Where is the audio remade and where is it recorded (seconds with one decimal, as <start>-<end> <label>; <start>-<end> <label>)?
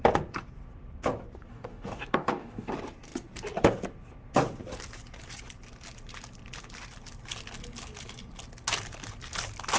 0.0-1.5 recorded; 1.5-2.7 remade; 2.7-9.8 recorded